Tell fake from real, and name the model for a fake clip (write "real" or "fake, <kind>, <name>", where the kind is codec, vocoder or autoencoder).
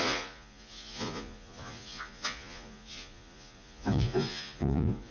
fake, vocoder, Vocos